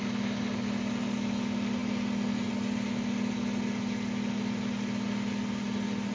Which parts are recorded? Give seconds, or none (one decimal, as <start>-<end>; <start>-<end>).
0.0-6.1